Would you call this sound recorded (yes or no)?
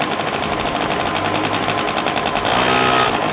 yes